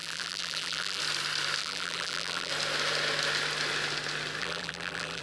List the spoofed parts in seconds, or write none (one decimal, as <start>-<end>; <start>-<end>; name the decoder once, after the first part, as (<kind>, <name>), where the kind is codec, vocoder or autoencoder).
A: 0.0-1.0 (vocoder, BigVGAN v2); 1.6-2.5; 4.4-5.2